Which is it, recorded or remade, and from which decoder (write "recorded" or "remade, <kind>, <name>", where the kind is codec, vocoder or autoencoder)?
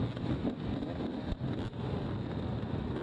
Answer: recorded